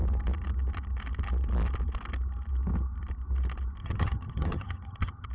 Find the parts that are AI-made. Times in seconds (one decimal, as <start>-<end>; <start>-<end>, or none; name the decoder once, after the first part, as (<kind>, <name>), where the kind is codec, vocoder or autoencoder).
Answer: 3.8-5.3 (vocoder, HiFi-GAN)